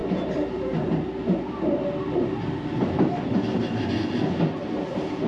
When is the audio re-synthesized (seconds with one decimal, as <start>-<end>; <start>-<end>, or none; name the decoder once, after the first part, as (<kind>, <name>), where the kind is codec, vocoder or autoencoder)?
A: none

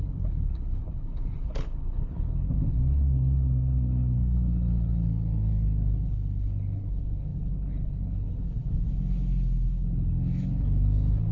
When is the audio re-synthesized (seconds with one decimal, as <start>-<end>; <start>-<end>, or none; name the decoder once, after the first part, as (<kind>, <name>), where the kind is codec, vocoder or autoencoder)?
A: 0.0-11.3 (codec, HILCodec)

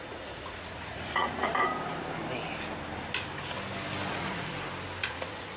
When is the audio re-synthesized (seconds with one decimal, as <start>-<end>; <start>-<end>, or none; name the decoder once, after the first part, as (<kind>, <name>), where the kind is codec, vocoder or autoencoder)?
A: 0.0-1.5 (vocoder, Vocos); 4.1-4.5; 5.0-5.6

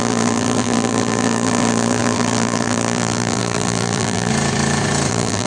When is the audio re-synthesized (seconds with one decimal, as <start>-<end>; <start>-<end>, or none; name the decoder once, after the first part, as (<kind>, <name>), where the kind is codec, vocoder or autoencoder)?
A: 0.0-4.3 (vocoder, BigVGAN v2); 5.1-5.5

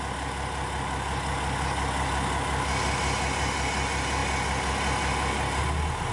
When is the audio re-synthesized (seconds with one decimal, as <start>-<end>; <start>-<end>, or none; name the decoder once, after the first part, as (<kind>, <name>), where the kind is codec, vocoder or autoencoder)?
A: none

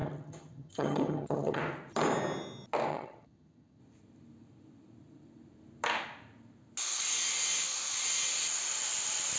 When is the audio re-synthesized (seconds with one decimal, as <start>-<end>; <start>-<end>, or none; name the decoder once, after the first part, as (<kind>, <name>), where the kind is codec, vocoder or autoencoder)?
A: 0.0-1.6 (vocoder, HiFi-GAN); 2.9-3.8

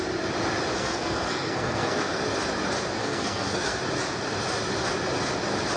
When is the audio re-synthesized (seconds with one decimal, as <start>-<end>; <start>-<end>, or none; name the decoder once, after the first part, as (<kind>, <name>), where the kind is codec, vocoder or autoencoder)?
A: 0.7-2.2 (codec, SNAC); 3.0-3.8